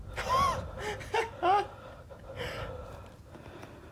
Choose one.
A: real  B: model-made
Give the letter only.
A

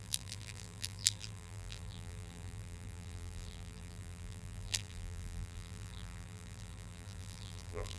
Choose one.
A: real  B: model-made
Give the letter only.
B